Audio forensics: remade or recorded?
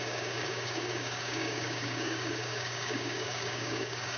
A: remade